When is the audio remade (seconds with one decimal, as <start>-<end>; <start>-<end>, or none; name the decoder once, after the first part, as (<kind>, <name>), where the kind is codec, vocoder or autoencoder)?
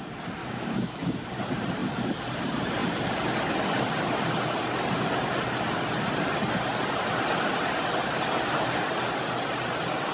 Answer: 0.4-1.3 (autoencoder, DAC-VAE)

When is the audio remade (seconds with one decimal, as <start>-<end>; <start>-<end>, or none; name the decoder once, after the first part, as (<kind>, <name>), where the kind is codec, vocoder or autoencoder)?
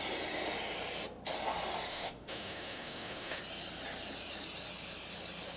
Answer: 1.9-3.4 (autoencoder, DAC-VAE)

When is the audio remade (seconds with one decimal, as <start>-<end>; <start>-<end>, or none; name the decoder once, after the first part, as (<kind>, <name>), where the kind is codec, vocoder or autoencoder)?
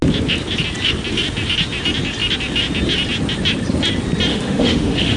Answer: 4.3-5.2 (autoencoder, DAC-VAE)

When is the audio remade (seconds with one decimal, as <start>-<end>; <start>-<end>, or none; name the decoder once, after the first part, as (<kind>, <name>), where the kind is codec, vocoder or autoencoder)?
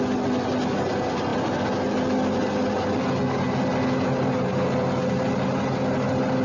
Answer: none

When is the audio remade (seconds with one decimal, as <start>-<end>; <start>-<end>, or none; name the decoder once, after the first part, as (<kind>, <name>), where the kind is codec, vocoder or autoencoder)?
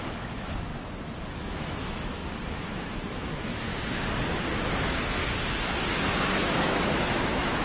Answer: 0.0-0.7 (autoencoder, DAC-VAE); 1.3-2.2; 2.7-3.7; 6.4-7.6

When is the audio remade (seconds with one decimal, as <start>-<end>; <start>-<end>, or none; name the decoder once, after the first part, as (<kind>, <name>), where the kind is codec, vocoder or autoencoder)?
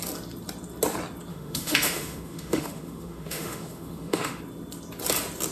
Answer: 1.3-4.4 (autoencoder, DAC-VAE)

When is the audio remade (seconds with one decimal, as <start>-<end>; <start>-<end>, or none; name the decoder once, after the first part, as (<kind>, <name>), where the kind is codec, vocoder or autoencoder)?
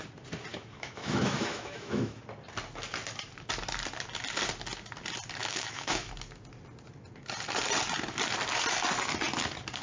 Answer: 0.5-2.2 (autoencoder, DAC-VAE); 5.4-6.1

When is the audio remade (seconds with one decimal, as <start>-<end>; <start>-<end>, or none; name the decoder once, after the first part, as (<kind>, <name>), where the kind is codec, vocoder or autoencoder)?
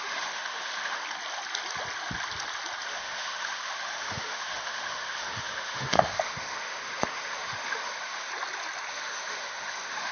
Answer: 0.0-1.0 (autoencoder, DAC-VAE); 2.9-8.3; 8.9-10.1